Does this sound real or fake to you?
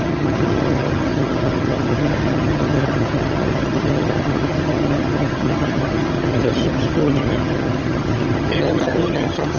fake